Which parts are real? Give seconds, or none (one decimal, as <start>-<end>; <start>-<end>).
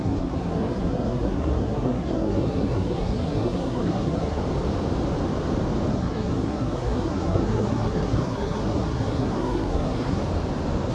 4.4-5.9; 10.2-10.9